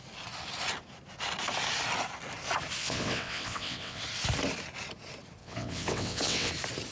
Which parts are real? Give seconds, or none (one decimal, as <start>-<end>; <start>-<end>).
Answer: 0.0-2.8; 4.0-5.4; 6.5-6.9